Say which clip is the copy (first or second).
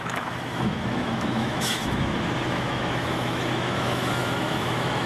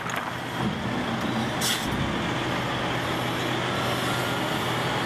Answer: first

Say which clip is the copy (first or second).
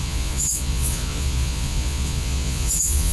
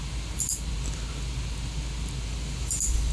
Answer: first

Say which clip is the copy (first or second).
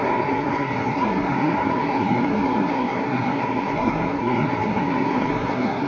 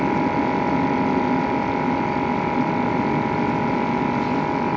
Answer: first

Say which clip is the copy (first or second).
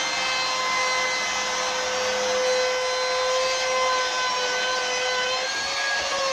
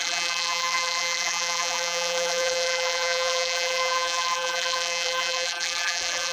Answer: second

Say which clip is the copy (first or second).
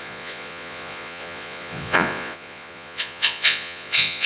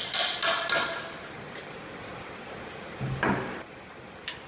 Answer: first